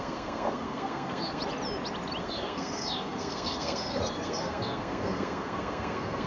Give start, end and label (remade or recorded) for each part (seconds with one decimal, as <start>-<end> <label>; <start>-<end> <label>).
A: 0.0-1.4 remade; 1.4-2.2 recorded; 2.2-6.3 remade